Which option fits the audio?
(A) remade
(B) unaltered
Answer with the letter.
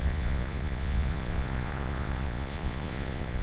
A